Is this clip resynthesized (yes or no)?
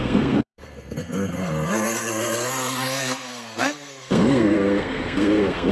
yes